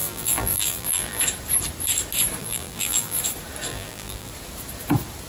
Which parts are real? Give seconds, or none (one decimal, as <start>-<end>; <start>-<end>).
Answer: 1.2-2.4; 3.2-3.7; 4.3-5.3